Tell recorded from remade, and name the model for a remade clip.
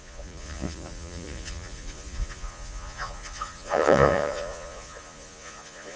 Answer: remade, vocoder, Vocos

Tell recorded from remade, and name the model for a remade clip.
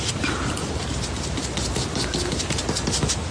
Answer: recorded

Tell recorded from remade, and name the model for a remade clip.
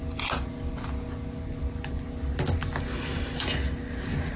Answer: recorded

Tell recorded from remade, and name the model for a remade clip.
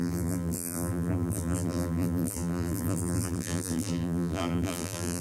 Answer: remade, vocoder, BigVGAN v2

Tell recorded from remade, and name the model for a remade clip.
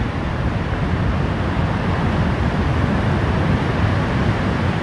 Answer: recorded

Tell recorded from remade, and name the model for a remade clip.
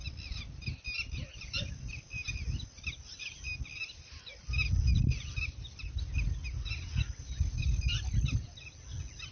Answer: recorded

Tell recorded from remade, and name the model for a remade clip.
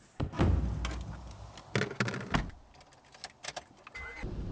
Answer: recorded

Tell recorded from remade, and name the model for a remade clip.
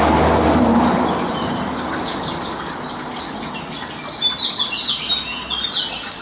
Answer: recorded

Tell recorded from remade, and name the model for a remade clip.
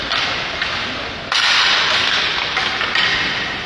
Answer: recorded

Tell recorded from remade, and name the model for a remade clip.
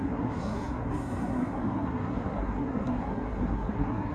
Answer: remade, codec, SNAC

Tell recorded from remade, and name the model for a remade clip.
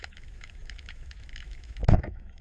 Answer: remade, autoencoder, DAC-VAE